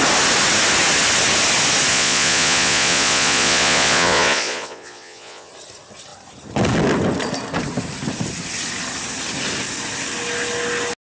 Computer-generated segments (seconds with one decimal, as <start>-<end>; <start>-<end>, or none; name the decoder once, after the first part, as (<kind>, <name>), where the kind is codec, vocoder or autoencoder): 1.9-5.5 (vocoder, Vocos)